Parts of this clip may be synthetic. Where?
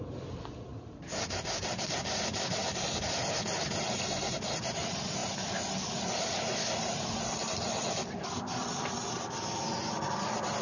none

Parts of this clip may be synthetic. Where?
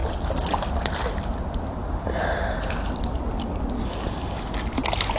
none